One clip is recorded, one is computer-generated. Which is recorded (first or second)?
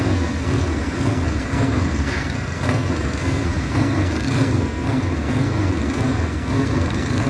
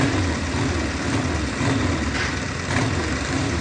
second